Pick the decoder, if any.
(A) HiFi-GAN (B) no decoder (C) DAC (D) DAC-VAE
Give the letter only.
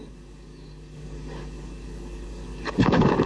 C